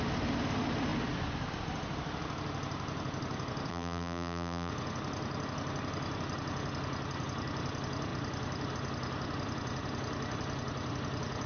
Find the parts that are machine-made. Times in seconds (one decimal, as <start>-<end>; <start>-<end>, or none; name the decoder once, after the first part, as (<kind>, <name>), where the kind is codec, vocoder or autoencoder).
3.7-4.7 (vocoder, BigVGAN v2)